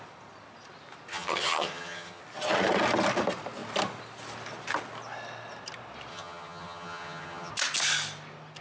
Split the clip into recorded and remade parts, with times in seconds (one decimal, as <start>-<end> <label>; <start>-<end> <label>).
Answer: 0.0-1.1 recorded; 1.1-2.2 remade; 2.2-6.1 recorded; 6.1-7.5 remade; 7.5-8.6 recorded